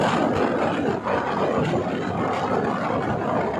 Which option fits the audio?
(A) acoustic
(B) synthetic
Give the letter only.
A